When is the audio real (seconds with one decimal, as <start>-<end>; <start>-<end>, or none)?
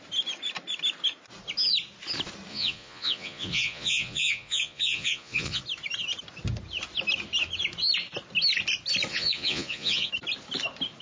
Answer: 0.0-2.5; 5.6-9.1; 10.1-11.0